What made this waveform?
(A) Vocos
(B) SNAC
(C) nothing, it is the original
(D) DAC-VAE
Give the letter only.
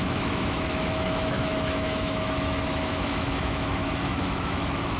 D